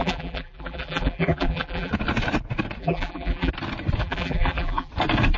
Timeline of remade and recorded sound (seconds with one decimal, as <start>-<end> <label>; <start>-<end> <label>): 0.0-1.9 remade; 1.9-2.8 recorded; 2.8-3.5 remade; 3.5-4.0 recorded; 4.0-4.9 remade; 4.9-5.4 recorded